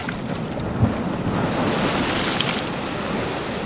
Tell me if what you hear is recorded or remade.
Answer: recorded